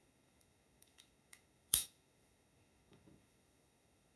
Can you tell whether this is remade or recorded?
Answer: remade